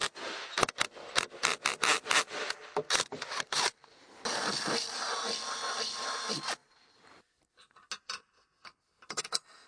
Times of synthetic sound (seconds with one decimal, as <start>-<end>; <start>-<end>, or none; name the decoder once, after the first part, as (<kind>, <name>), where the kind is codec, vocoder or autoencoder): none